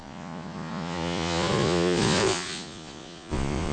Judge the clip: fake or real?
fake